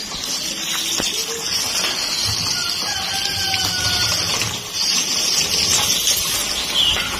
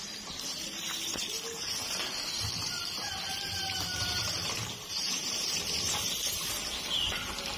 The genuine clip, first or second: first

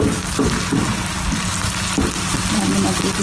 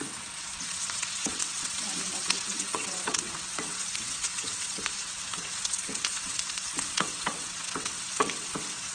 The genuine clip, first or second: first